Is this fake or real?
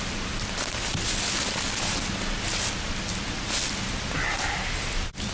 real